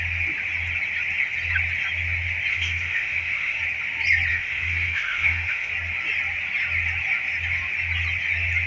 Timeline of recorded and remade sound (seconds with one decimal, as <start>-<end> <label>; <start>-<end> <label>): 0.0-2.5 recorded; 2.5-3.6 remade; 3.6-4.3 recorded; 4.3-5.7 remade; 5.7-8.7 recorded